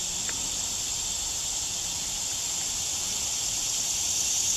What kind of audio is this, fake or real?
real